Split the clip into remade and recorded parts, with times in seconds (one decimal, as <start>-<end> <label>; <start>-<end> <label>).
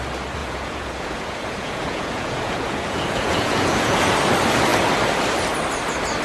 0.0-0.4 recorded; 0.4-4.1 remade; 4.1-6.2 recorded